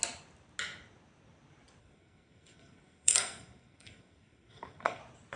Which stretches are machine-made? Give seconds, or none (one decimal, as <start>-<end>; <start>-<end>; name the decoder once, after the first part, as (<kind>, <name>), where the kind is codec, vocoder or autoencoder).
1.8-5.0 (codec, SNAC)